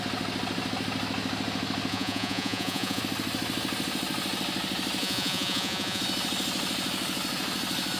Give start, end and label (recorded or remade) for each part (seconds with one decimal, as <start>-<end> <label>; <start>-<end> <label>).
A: 0.0-1.9 recorded; 1.9-3.0 remade; 3.0-5.0 recorded; 5.0-6.0 remade; 6.0-8.0 recorded